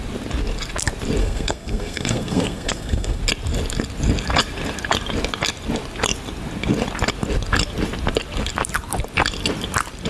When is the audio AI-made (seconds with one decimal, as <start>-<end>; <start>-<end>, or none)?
1.2-3.2